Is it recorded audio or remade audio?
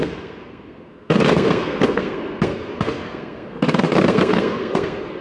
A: remade